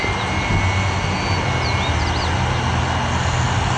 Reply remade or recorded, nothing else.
recorded